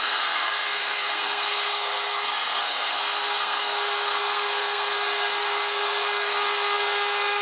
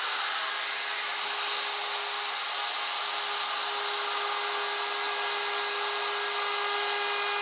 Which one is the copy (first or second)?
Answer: first